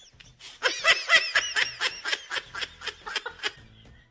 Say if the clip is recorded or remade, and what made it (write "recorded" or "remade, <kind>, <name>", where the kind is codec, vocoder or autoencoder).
recorded